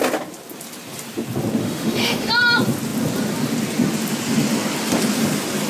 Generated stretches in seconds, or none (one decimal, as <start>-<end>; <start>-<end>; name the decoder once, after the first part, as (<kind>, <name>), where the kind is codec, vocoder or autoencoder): 1.6-2.3 (autoencoder, DAC-VAE)